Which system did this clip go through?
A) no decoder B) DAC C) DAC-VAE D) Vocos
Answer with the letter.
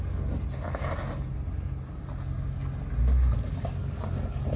A